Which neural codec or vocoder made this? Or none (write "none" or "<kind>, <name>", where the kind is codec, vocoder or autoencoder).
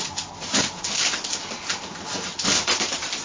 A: none